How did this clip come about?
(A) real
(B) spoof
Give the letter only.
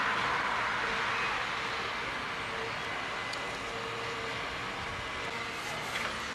A